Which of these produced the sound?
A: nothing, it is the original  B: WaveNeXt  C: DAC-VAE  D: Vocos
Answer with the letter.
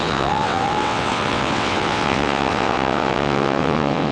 B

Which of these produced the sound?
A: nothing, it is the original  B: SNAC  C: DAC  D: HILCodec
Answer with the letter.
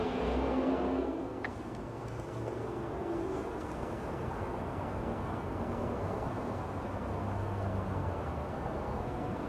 B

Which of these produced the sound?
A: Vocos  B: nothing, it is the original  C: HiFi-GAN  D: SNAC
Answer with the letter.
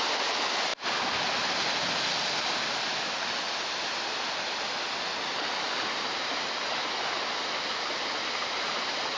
B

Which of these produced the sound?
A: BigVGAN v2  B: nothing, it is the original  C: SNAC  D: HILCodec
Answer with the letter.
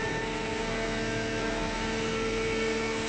C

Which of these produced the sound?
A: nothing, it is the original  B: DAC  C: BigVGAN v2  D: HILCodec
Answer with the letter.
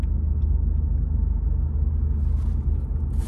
A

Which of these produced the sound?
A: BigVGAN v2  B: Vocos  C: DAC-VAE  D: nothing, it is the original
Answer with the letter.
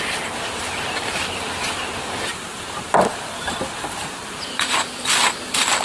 A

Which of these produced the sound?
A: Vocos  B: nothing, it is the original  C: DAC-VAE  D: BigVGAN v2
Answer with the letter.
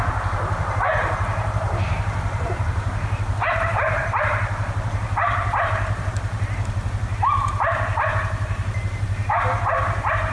D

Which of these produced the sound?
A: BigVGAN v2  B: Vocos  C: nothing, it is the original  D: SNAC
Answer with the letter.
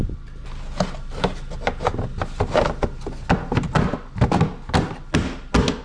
C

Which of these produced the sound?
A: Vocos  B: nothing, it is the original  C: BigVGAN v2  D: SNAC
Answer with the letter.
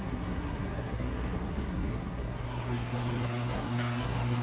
D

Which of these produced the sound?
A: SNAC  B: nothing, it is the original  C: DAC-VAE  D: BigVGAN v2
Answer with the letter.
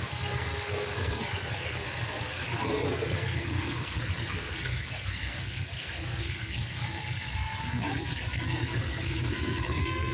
A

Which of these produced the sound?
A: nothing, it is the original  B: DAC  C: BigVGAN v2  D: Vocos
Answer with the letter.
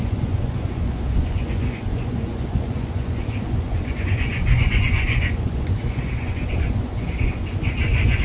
D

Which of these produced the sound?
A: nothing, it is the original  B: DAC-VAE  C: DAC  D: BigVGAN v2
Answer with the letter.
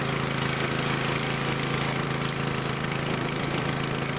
D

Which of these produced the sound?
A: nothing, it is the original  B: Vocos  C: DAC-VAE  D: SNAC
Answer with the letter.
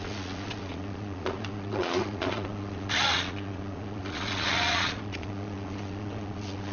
B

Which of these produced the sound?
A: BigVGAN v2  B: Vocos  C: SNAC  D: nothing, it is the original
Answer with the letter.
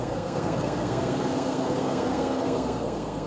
C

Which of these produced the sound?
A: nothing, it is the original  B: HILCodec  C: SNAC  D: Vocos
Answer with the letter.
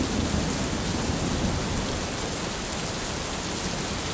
A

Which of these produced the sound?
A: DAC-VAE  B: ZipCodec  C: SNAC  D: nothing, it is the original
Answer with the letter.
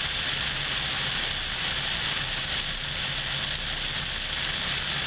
D